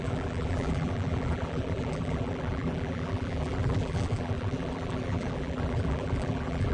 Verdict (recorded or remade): remade